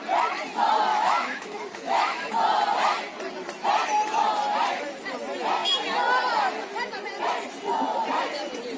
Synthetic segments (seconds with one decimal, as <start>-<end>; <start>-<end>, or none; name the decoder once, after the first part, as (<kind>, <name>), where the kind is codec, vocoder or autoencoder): 0.9-2.3 (autoencoder, DAC-VAE)